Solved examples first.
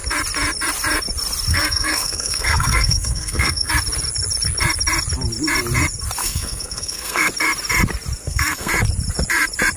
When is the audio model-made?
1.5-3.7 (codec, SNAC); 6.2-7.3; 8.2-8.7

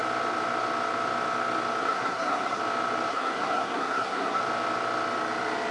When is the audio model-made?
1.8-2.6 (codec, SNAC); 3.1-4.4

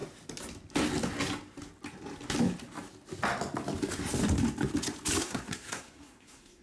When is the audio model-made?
5.2-6.6 (codec, SNAC)

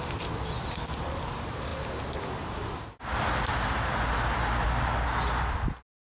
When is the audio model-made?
none

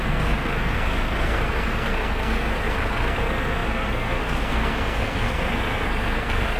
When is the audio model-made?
0.0-6.6 (codec, SNAC)